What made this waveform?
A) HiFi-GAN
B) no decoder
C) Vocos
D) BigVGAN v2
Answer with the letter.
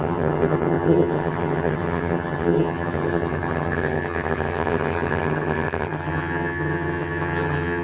A